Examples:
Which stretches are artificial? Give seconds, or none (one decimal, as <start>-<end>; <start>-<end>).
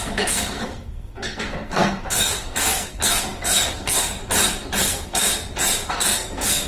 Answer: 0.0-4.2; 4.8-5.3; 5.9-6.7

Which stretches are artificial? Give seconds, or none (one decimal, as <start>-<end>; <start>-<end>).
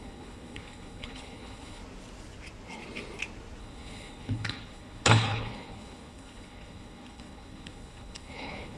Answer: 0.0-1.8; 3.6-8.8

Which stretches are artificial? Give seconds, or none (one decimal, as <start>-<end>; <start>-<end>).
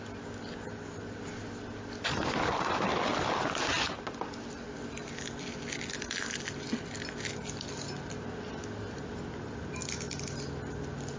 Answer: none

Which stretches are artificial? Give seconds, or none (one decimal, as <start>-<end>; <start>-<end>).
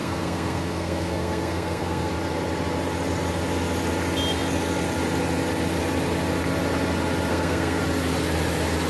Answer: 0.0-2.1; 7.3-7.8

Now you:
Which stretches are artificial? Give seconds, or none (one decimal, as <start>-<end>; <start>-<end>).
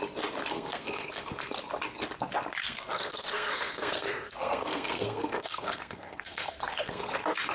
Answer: 0.5-1.5; 2.6-7.1